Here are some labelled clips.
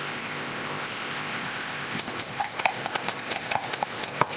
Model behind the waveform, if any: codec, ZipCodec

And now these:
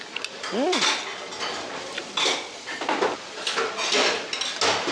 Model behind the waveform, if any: none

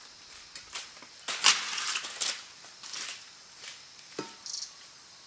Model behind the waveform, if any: none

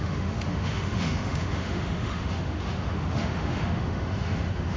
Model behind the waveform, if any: autoencoder, DAC-VAE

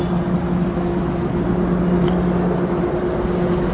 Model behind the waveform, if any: none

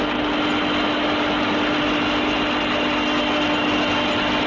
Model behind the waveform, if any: none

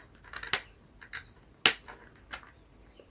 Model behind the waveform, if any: none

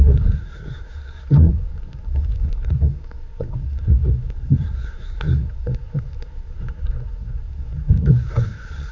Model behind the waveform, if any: codec, SNAC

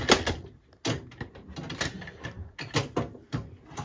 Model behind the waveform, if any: none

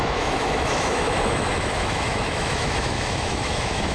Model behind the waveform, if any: autoencoder, DAC-VAE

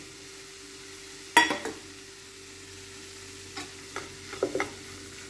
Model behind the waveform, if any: none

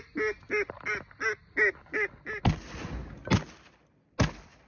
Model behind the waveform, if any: none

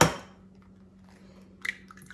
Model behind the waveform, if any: none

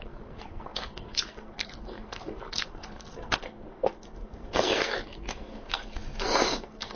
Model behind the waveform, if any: codec, SNAC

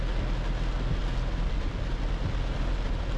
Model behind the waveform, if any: none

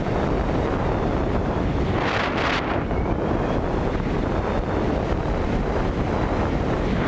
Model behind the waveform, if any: none